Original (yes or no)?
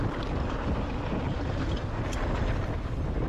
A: yes